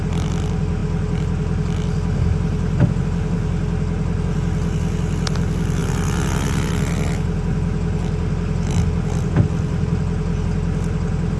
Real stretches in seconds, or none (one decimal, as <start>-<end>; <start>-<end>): 0.0-11.4